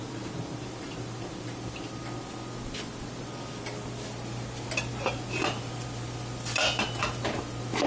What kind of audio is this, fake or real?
real